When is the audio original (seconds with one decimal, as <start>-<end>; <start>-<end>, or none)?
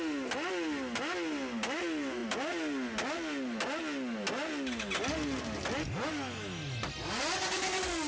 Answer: 0.0-8.1